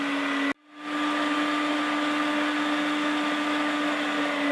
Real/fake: real